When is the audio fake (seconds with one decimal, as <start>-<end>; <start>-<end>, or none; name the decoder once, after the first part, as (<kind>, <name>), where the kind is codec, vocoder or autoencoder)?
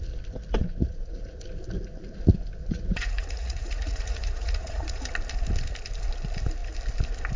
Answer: 0.6-1.4 (vocoder, Vocos); 2.6-5.1